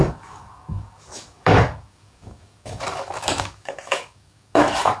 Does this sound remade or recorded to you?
remade